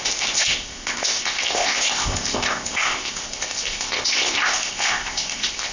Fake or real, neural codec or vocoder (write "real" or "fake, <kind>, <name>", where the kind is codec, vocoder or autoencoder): fake, codec, ZipCodec